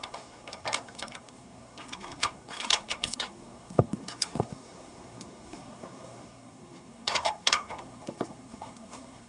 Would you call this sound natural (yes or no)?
no